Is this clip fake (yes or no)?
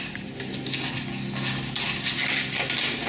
no